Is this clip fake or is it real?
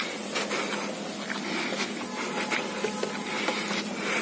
real